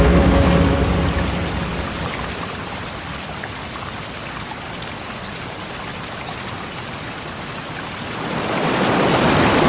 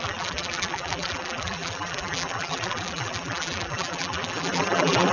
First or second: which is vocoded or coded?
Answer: second